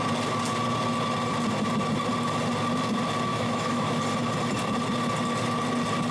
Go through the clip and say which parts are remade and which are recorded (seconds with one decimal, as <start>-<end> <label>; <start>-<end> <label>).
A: 0.0-3.3 recorded; 3.3-4.0 remade; 4.0-6.1 recorded